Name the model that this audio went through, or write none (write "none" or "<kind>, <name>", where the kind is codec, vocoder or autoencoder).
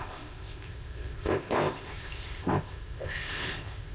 codec, ZipCodec